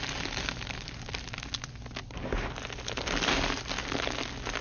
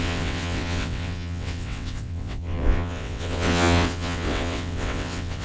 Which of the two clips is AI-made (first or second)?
second